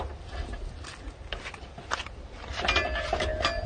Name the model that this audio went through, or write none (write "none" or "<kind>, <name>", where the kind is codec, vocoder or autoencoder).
none